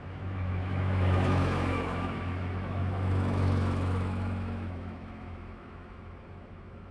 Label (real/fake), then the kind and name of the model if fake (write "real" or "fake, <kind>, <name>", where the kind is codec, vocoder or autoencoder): fake, autoencoder, DAC-VAE